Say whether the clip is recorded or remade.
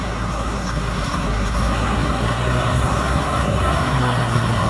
remade